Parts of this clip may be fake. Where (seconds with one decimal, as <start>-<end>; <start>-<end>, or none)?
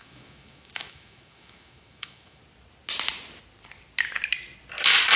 0.0-2.4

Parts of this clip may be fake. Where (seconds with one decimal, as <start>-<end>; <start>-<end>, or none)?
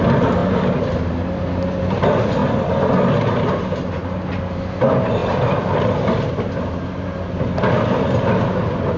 none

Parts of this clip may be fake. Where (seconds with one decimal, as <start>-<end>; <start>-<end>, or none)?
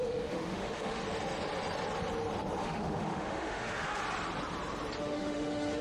0.0-1.0; 2.6-4.0; 5.0-5.8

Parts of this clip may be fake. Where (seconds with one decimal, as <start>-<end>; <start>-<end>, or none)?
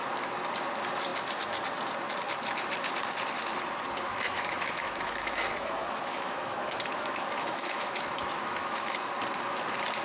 4.1-9.1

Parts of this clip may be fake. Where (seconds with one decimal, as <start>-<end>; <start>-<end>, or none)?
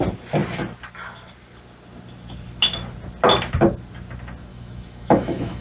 4.5-5.6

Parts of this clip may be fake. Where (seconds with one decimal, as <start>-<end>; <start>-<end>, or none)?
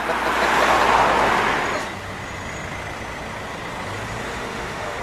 4.2-5.0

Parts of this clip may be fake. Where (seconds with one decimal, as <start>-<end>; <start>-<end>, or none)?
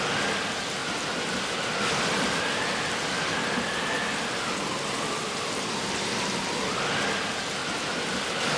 none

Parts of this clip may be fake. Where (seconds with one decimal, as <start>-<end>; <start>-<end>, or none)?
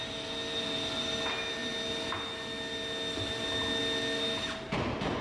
none